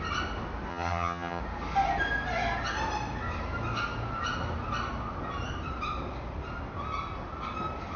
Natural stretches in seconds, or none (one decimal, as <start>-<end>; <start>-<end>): 0.0-0.7; 1.4-8.0